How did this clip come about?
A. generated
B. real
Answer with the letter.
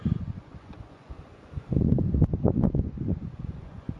A